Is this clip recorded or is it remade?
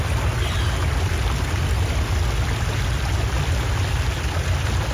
recorded